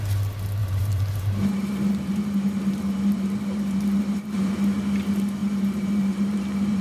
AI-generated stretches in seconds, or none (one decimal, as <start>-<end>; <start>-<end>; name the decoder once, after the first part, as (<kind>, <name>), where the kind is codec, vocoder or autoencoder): 0.6-4.5 (vocoder, BigVGAN v2); 5.4-6.8